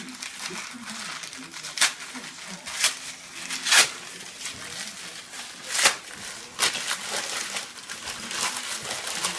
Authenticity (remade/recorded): recorded